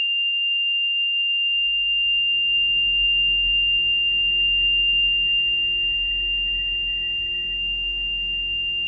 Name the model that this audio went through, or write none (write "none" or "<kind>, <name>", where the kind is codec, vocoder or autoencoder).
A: codec, DAC